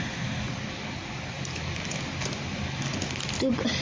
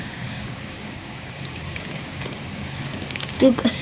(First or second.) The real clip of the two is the first